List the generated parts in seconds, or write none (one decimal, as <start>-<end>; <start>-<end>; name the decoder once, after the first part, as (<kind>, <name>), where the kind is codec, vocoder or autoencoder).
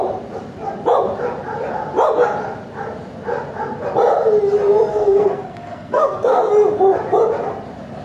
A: 4.9-6.5 (codec, SNAC)